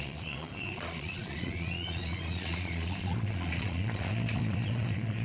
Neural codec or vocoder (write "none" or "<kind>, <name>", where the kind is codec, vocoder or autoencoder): vocoder, Vocos